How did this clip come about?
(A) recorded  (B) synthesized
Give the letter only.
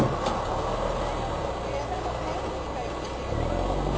A